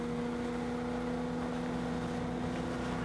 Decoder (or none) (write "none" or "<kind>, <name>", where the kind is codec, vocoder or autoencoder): none